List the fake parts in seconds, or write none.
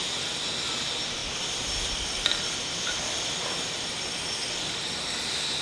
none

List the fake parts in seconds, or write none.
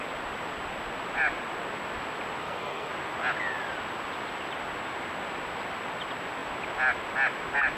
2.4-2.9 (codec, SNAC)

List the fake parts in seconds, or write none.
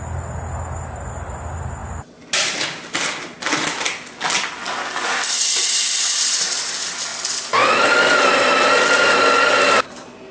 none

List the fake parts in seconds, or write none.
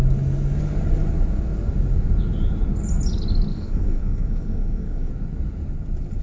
3.5-5.1 (codec, SNAC)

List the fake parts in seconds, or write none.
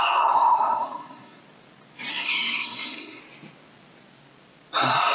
0.0-1.4 (codec, SNAC); 2.1-3.2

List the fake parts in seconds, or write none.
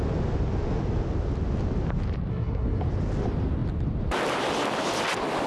2.3-2.8 (codec, SNAC)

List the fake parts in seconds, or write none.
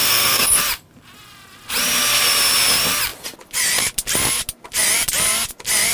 0.0-0.6 (codec, SNAC)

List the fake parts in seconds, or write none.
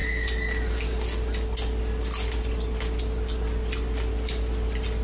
none